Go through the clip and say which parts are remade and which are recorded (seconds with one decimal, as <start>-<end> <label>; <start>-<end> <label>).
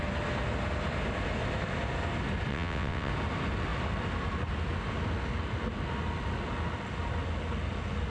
0.0-2.5 recorded; 2.5-3.1 remade; 3.1-8.1 recorded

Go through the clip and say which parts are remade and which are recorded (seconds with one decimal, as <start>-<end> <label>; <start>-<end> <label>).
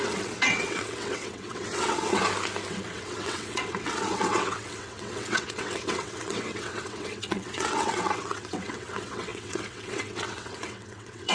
0.0-2.2 remade; 2.2-2.7 recorded; 2.7-11.3 remade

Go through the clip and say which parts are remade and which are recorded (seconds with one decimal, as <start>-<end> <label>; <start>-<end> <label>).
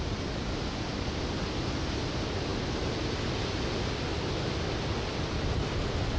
0.0-6.2 recorded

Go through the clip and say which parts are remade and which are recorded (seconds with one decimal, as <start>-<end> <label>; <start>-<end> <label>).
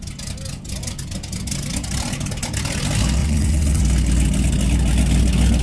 0.0-3.2 recorded; 3.2-3.8 remade; 3.8-5.6 recorded